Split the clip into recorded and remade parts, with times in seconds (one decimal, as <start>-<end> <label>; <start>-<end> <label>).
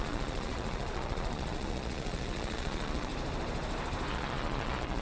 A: 0.0-3.1 remade; 3.1-4.1 recorded; 4.1-5.0 remade